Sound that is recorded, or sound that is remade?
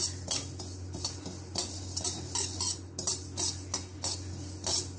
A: recorded